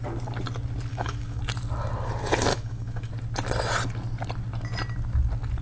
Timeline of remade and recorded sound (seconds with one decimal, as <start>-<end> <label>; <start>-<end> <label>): 0.0-0.9 recorded; 0.9-1.4 remade; 1.4-2.5 recorded; 2.5-3.1 remade; 3.1-5.6 recorded